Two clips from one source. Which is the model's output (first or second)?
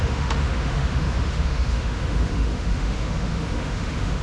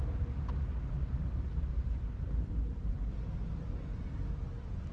first